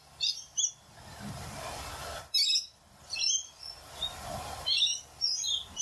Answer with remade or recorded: recorded